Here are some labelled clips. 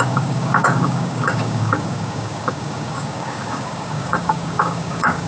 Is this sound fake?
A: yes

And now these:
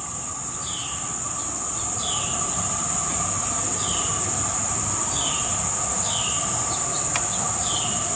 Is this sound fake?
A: no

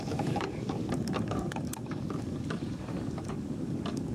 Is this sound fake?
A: yes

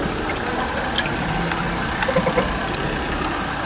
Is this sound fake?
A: no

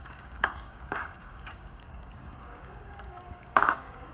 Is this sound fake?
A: yes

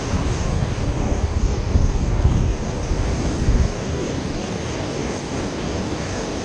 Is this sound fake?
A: yes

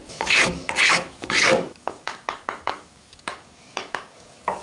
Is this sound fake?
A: yes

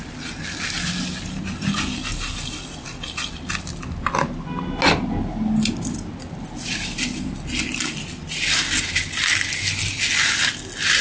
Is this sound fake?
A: no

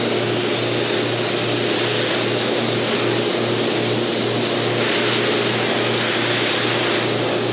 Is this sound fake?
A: no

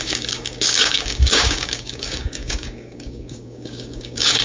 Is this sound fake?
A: yes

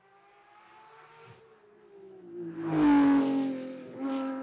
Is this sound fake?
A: no